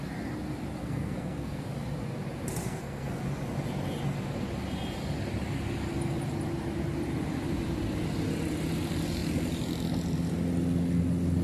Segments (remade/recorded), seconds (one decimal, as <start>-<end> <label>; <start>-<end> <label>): 0.0-0.8 recorded; 0.8-1.6 remade; 1.6-2.6 recorded; 2.6-3.2 remade; 3.2-11.4 recorded